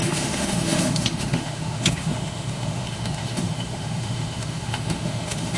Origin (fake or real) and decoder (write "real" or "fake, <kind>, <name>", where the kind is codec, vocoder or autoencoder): fake, autoencoder, DAC-VAE